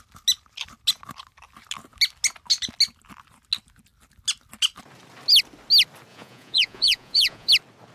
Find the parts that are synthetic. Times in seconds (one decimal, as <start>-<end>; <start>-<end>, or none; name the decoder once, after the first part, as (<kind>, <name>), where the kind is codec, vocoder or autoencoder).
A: 6.1-7.5 (vocoder, Vocos)